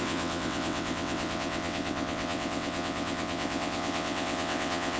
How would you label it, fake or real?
fake